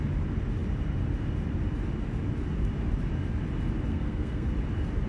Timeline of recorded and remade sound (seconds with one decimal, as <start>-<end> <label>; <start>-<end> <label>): 0.0-3.9 recorded; 3.9-4.5 remade; 4.5-5.1 recorded